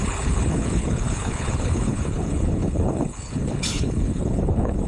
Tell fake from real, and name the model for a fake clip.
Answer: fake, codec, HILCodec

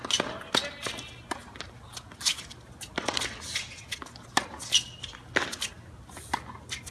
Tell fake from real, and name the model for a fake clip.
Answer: real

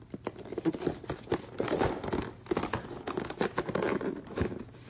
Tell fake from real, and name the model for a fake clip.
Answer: real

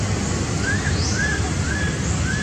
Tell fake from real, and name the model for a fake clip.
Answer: real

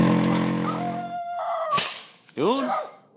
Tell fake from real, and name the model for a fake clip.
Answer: fake, autoencoder, DAC-VAE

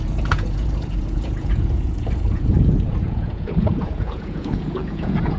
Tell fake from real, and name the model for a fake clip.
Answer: fake, vocoder, Vocos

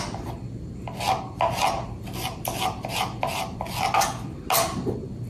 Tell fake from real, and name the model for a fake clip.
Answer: real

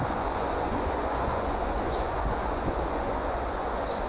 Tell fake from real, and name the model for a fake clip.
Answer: fake, vocoder, Vocos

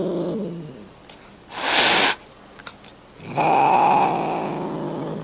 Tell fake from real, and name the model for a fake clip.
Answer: real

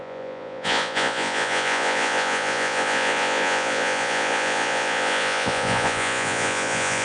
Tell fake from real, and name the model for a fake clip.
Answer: fake, vocoder, Vocos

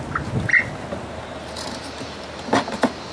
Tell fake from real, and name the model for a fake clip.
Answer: real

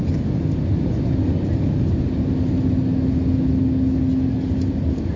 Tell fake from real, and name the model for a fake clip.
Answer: real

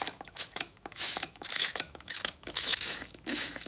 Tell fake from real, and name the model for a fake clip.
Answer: fake, autoencoder, DAC-VAE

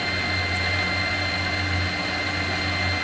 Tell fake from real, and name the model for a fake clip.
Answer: real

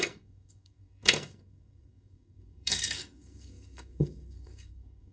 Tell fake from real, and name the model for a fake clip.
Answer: fake, codec, SNAC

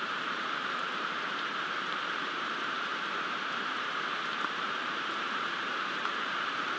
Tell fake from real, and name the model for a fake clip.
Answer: fake, vocoder, BigVGAN v2